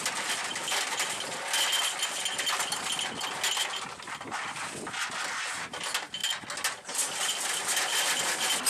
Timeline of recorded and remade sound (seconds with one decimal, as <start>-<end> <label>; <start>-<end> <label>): 0.0-8.7 recorded